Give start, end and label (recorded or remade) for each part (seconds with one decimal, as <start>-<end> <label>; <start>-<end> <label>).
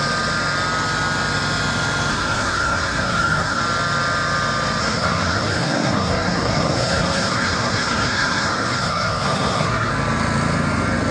0.0-2.1 recorded; 2.1-3.6 remade; 3.6-4.8 recorded; 4.8-9.9 remade; 9.9-11.1 recorded